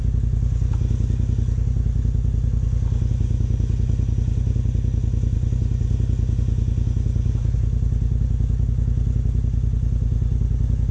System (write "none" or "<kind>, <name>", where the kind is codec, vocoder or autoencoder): none